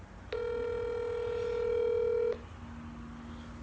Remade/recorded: recorded